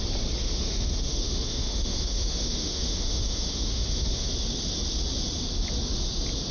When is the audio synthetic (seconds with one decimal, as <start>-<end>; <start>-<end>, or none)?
0.4-4.3